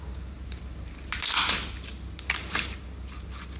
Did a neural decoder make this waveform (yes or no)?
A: no